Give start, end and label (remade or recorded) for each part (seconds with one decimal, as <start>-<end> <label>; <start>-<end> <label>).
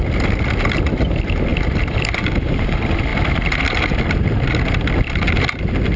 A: 0.0-6.0 recorded